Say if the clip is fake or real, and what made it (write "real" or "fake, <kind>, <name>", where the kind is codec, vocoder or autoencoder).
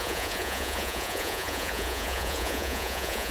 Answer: fake, vocoder, Vocos